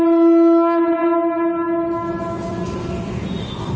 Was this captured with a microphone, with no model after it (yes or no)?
yes